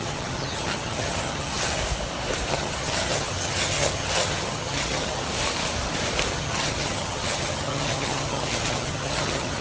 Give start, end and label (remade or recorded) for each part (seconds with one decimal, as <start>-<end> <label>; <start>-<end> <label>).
0.0-1.8 remade; 1.8-2.5 recorded; 2.5-5.3 remade; 5.3-6.3 recorded; 6.3-9.6 remade